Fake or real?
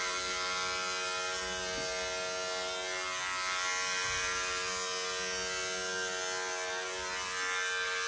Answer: real